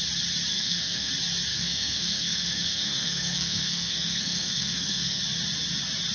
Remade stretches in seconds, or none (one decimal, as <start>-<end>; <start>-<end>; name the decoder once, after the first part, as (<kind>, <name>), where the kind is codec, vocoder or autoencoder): 0.5-1.1 (codec, SNAC); 1.5-5.2